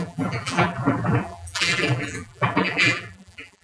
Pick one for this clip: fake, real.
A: fake